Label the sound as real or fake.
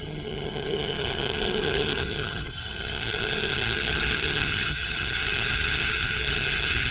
fake